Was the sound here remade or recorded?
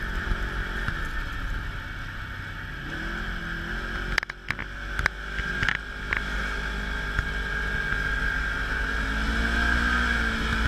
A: recorded